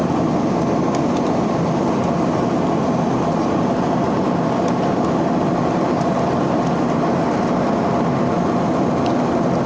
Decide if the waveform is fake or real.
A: real